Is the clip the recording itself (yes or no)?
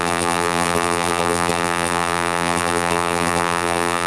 no